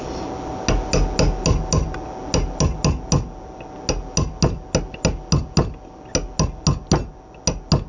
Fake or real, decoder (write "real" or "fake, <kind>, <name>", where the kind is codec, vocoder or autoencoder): real